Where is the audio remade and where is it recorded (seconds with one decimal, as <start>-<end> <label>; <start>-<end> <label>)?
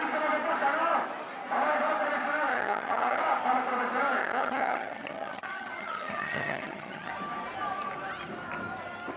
0.0-2.5 recorded; 2.5-3.2 remade; 3.2-4.2 recorded; 4.2-7.1 remade; 7.1-9.2 recorded